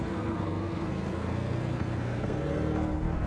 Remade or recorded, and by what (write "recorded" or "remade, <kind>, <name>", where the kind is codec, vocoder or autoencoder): remade, codec, SNAC